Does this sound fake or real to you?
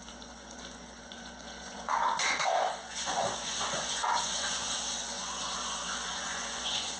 fake